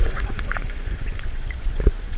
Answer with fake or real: fake